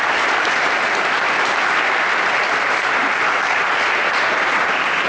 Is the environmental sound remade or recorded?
recorded